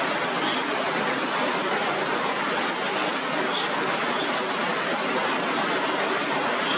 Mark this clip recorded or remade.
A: recorded